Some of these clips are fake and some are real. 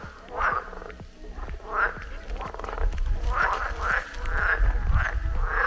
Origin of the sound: real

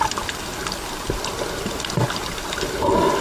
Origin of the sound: real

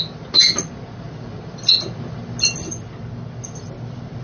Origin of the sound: real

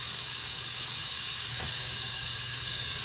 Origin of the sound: fake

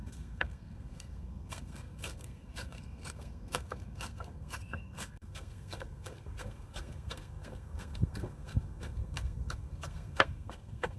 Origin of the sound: fake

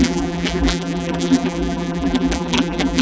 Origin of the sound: fake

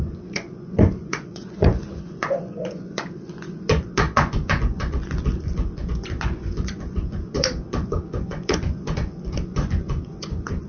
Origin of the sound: fake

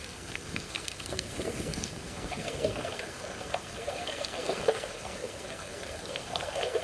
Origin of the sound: fake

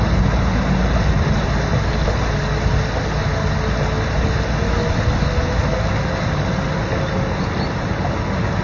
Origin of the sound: real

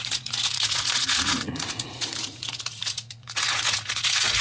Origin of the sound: fake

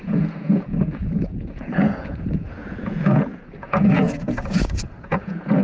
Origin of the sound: fake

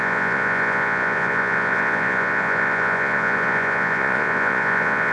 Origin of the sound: fake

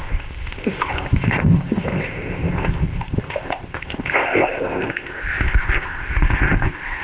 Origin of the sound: fake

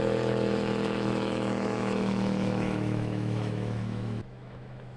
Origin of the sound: fake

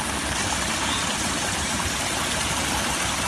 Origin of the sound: real